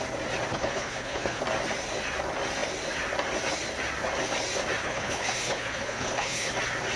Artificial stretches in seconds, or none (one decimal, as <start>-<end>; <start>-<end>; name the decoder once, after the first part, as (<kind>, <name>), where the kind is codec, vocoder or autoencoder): 0.5-1.4 (codec, HILCodec); 4.8-6.5